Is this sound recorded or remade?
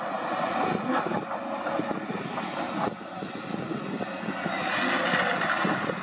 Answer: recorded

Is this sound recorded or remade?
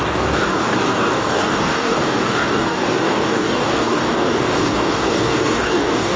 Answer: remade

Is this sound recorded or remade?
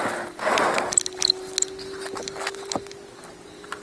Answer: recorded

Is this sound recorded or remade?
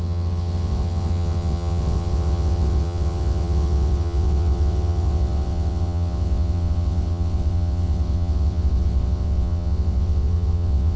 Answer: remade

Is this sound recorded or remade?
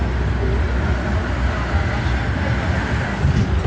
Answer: recorded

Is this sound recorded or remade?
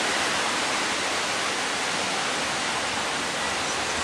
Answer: recorded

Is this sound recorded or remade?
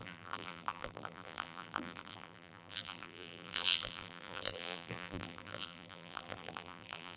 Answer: remade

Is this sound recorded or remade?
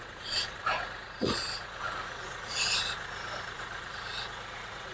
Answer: remade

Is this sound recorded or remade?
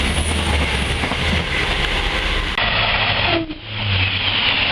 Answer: recorded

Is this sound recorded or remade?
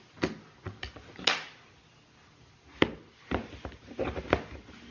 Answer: recorded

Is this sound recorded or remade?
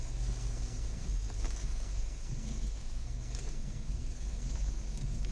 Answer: remade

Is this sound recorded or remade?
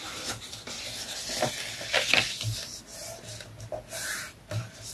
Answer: recorded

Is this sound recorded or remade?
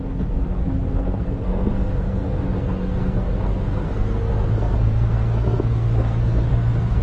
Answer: remade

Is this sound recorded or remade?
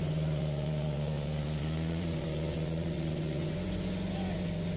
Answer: remade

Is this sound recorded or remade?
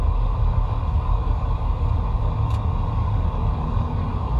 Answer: remade